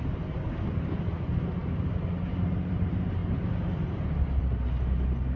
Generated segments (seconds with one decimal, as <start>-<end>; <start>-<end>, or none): none